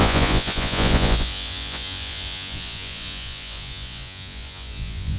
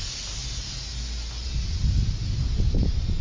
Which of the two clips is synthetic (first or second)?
first